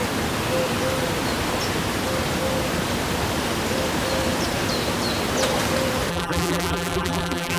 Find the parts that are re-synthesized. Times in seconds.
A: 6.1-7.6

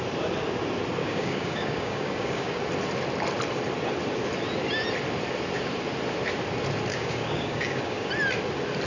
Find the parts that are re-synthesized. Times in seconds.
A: 1.0-2.6; 6.9-8.1

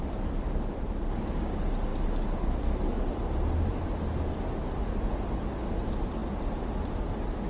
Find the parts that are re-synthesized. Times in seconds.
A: none

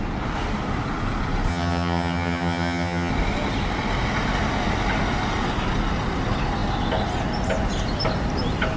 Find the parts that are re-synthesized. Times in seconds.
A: 1.5-3.1